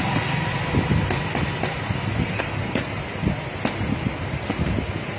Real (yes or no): yes